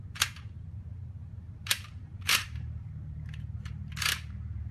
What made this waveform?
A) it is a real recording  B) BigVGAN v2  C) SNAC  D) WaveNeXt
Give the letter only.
B